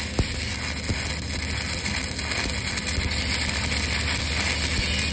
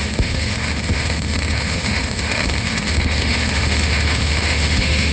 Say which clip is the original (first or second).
first